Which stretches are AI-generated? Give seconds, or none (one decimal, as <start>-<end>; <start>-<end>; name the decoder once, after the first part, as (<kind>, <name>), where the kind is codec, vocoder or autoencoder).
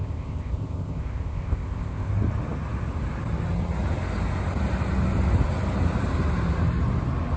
0.0-2.1 (codec, ZipCodec)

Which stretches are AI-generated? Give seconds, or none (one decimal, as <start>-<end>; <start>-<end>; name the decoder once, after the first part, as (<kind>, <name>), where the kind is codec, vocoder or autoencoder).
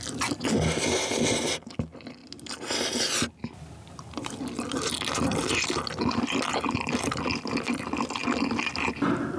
none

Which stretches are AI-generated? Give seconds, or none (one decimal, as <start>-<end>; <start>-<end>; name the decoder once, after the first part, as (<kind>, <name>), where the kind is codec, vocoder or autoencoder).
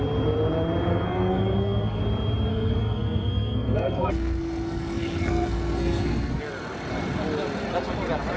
0.9-2.0 (codec, SNAC); 2.5-6.4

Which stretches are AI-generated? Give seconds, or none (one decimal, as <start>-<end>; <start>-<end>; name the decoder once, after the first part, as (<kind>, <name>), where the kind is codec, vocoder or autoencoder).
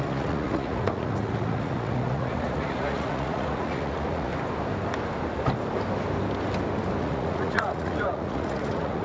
0.0-4.3 (vocoder, Vocos); 7.0-9.0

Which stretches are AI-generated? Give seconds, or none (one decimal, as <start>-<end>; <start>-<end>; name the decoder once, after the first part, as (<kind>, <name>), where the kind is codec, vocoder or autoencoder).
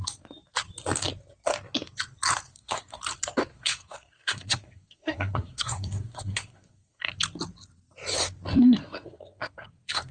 2.5-3.0 (codec, SNAC); 3.5-7.1; 8.5-10.1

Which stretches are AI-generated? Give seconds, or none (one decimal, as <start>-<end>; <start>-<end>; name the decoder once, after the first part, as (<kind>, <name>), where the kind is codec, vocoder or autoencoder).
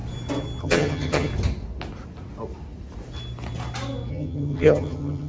0.6-1.3 (vocoder, HiFi-GAN); 4.1-5.3